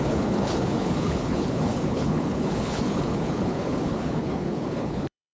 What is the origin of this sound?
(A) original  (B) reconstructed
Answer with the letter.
B